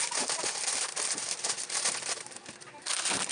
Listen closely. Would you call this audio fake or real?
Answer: fake